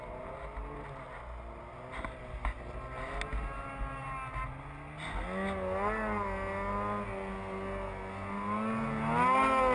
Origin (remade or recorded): recorded